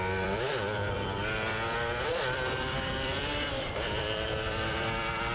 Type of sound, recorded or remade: remade